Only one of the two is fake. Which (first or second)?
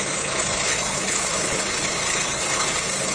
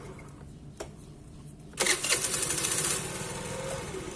first